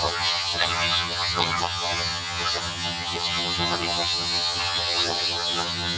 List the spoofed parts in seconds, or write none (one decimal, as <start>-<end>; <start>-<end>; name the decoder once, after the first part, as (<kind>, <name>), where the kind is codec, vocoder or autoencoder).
0.0-6.0 (vocoder, HiFi-GAN)

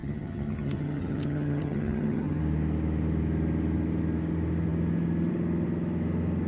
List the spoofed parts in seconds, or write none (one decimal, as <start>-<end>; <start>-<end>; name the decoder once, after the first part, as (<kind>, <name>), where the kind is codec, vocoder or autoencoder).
0.0-2.4 (vocoder, HiFi-GAN)